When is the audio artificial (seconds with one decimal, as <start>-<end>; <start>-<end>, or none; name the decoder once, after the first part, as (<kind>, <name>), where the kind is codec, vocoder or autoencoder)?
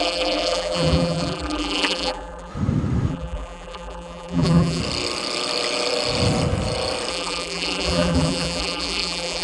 0.0-2.5 (vocoder, BigVGAN v2); 3.1-4.8; 7.1-9.4